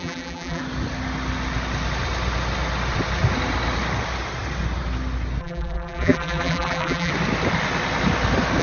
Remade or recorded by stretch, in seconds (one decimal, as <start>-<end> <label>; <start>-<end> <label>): 0.0-0.6 remade; 0.6-5.4 recorded; 5.4-7.1 remade; 7.1-8.6 recorded